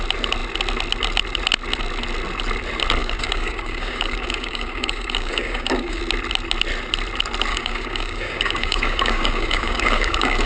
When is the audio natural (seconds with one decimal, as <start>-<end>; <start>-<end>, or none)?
0.0-3.0; 6.0-7.5